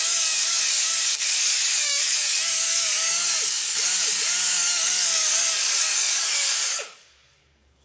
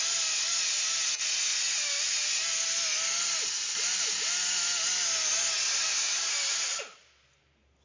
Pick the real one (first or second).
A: second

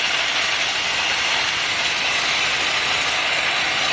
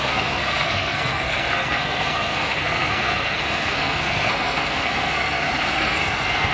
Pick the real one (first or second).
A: first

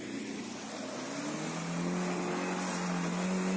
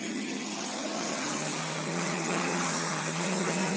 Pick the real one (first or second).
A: first